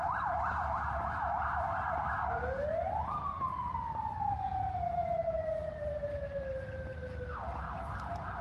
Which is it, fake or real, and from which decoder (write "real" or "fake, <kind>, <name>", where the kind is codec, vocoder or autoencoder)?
real